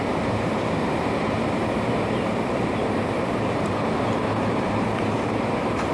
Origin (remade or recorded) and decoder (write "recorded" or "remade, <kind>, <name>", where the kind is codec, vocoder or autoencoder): remade, vocoder, BigVGAN v2